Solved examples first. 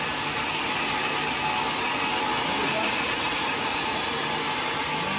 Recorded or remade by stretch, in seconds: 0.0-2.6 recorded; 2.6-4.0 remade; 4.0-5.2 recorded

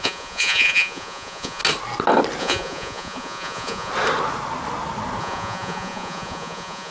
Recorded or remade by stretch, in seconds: 0.0-1.6 remade; 1.6-2.4 recorded; 2.4-3.9 remade; 3.9-5.2 recorded; 5.2-6.9 remade

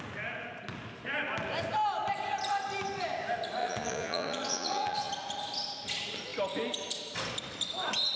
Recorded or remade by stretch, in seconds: 0.0-3.6 recorded; 3.6-5.1 remade; 5.1-8.2 recorded

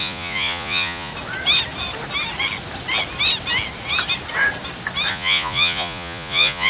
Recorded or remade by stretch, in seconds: 0.0-1.1 remade; 1.1-5.1 recorded; 5.1-6.7 remade

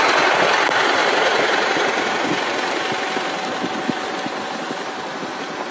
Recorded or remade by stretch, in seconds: 0.0-1.0 recorded; 1.0-2.5 remade; 2.5-5.7 recorded

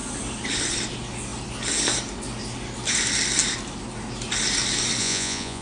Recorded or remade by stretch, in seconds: 0.0-5.0 recorded; 5.0-5.6 remade

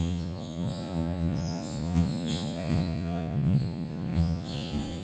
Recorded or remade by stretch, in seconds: 0.0-5.0 remade